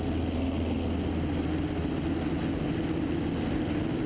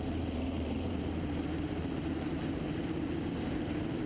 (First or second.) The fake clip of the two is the second